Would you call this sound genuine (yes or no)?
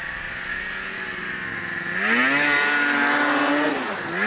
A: yes